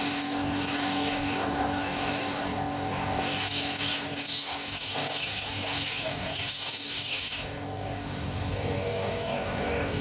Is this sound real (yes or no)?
no